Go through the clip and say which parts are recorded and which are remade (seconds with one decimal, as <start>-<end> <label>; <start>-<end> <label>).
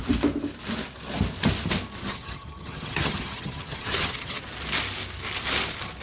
0.0-2.0 recorded; 2.0-4.4 remade; 4.4-6.0 recorded